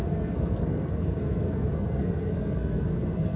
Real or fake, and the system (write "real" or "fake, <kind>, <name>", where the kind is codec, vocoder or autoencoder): fake, codec, SNAC